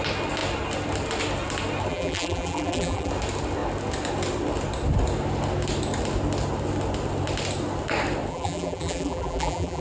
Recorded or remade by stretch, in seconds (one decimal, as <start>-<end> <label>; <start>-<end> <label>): 0.0-1.9 recorded; 1.9-3.1 remade; 3.1-8.3 recorded; 8.3-9.8 remade